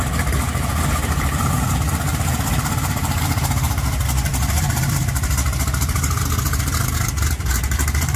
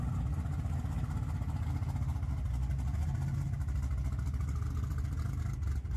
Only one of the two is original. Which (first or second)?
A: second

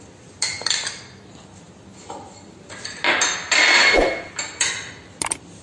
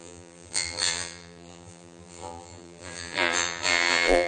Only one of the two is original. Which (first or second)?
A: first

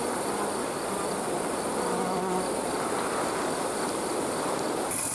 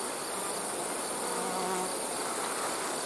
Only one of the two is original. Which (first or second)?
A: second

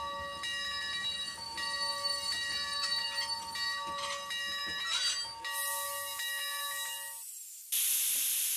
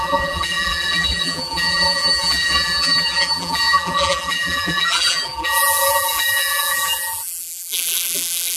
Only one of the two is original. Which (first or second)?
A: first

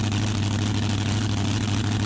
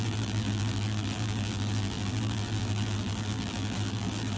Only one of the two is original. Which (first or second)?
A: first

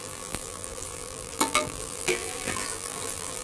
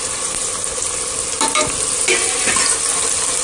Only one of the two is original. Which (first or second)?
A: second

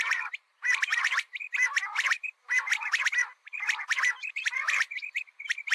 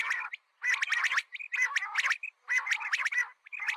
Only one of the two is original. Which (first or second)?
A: second